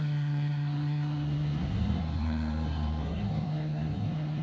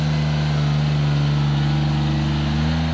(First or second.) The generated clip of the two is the first